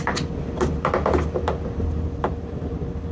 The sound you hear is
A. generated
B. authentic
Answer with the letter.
B